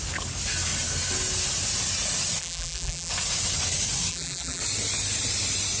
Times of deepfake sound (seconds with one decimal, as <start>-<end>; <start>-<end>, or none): 2.4-3.1; 4.1-4.6